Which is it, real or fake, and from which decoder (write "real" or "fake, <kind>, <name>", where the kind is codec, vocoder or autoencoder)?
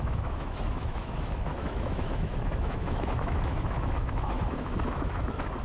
fake, autoencoder, DAC-VAE